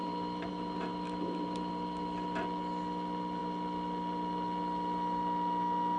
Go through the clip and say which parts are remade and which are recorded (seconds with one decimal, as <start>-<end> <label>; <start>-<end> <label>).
0.0-0.5 remade; 0.5-0.9 recorded; 0.9-1.7 remade; 1.7-6.0 recorded